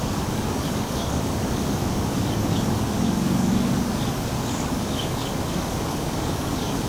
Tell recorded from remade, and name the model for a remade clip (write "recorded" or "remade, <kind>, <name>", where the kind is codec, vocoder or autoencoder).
remade, codec, DAC